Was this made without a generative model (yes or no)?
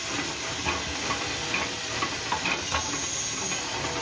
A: yes